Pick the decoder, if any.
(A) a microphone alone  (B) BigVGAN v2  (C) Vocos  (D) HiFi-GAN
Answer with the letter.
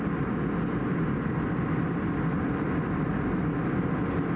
A